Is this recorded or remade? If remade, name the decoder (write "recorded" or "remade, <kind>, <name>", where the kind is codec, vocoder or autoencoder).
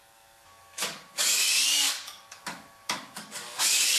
remade, codec, DAC